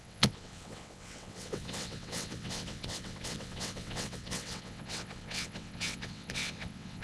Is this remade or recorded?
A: remade